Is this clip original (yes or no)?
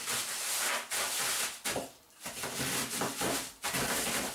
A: yes